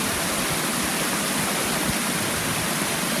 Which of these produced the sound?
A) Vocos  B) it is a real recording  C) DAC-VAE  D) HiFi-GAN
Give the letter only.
B